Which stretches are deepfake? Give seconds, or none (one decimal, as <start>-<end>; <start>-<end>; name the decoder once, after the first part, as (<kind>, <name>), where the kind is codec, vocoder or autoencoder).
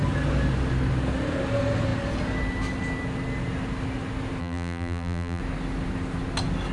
4.4-5.4 (vocoder, BigVGAN v2)